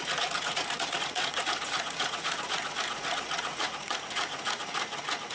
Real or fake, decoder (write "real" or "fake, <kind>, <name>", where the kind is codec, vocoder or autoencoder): fake, vocoder, Vocos